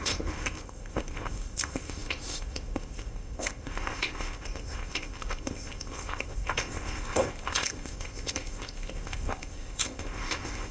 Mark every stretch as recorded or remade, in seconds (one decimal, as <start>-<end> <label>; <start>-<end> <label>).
0.0-10.7 remade